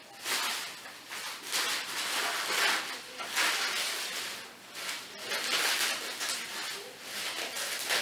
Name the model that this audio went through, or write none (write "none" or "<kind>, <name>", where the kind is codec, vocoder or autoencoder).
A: none